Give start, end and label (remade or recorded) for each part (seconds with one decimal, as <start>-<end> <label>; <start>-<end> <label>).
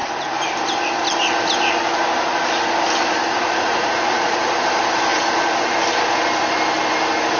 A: 0.0-3.2 recorded; 3.2-4.5 remade; 4.5-7.4 recorded